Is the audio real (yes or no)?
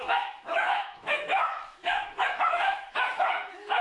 no